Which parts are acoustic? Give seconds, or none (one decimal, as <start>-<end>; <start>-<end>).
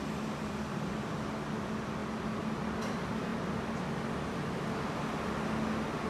0.0-6.1